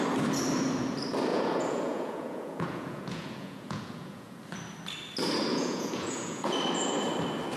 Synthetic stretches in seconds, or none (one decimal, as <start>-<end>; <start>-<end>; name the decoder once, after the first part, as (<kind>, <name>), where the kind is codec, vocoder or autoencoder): 1.3-4.4 (vocoder, Vocos); 5.5-6.6